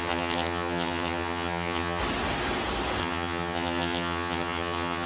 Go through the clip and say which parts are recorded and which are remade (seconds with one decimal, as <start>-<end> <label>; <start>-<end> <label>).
0.0-2.0 remade; 2.0-3.0 recorded; 3.0-5.1 remade